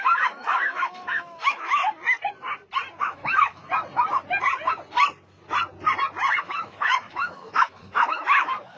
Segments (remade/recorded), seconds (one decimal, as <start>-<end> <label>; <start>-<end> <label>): 0.0-1.8 remade; 1.8-3.0 recorded; 3.0-3.6 remade; 3.6-6.4 recorded; 6.4-8.8 remade